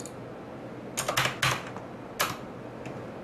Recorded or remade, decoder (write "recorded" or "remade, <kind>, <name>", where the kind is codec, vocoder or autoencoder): recorded